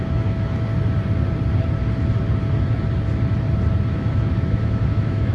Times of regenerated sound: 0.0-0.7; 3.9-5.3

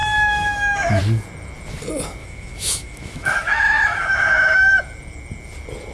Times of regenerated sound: 0.0-1.0; 2.2-4.8